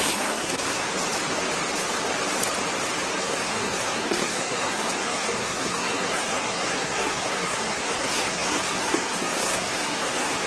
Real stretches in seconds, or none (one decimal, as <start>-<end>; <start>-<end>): 0.9-3.2